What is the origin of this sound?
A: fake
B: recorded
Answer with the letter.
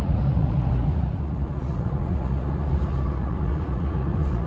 A